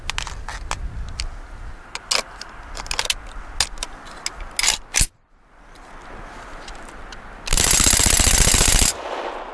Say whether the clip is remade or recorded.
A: recorded